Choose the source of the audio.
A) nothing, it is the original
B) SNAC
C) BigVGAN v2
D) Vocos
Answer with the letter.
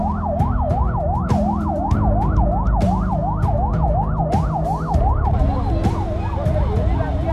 A